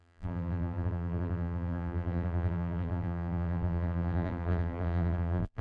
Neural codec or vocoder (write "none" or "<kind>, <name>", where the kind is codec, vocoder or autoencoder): vocoder, BigVGAN v2